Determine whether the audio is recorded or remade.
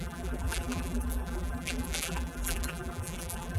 remade